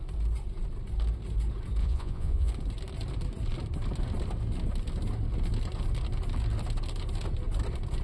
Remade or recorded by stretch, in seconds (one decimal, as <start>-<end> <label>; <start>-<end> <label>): 0.0-1.8 recorded; 1.8-2.5 remade; 2.5-8.0 recorded

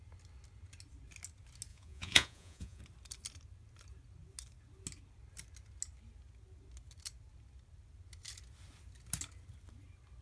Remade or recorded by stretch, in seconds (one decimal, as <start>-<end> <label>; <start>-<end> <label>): 0.0-1.7 recorded; 1.7-2.8 remade; 2.8-10.2 recorded